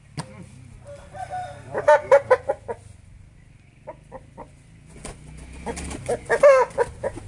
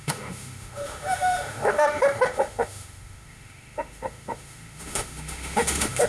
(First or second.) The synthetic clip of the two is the second